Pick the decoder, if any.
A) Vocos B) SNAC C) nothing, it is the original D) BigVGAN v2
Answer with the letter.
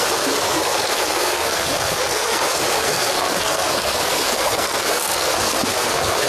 B